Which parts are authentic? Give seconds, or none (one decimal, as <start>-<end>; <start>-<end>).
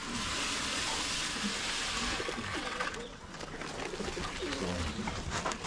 0.0-2.5; 3.2-5.7